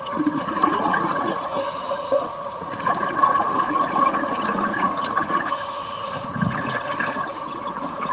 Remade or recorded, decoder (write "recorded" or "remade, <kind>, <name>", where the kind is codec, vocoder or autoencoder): remade, vocoder, Vocos